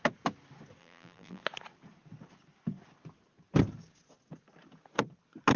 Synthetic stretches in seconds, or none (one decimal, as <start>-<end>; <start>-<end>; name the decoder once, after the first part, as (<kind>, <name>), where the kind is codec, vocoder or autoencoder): 0.8-1.4 (vocoder, BigVGAN v2)